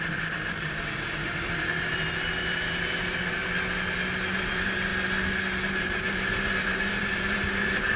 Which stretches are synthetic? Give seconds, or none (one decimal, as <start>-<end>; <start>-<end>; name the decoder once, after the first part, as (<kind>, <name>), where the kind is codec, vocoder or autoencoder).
0.0-3.4 (vocoder, BigVGAN v2); 4.2-4.9; 5.7-8.0